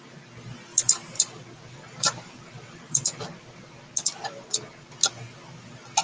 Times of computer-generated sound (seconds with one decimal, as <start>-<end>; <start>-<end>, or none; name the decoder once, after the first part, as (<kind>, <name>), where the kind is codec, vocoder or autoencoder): 0.7-3.2 (vocoder, BigVGAN v2)